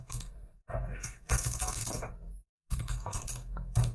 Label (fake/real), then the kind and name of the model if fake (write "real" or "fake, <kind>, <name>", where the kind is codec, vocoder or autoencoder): fake, codec, SNAC